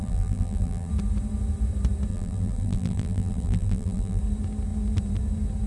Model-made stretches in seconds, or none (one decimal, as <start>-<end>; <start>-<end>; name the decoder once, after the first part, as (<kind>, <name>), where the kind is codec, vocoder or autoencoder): 0.0-0.9 (vocoder, BigVGAN v2); 2.1-4.2